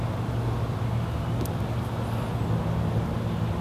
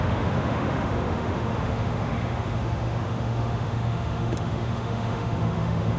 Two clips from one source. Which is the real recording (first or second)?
first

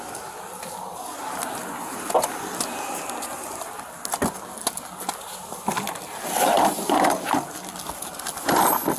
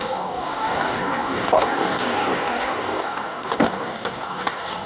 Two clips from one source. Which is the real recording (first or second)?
first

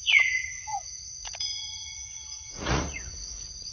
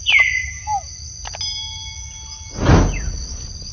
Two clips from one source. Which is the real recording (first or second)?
second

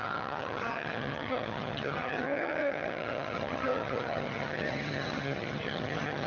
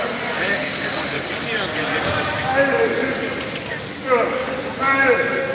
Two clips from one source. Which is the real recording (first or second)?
second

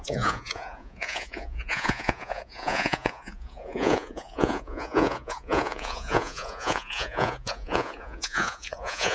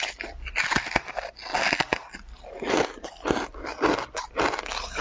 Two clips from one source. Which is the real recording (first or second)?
second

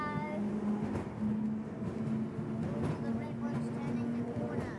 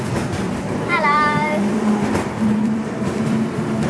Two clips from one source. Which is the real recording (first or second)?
first